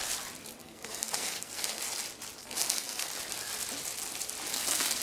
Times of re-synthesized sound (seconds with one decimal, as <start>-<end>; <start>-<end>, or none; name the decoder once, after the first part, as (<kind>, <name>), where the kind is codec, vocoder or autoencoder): 0.6-1.8 (codec, SNAC); 2.4-3.1; 4.5-5.0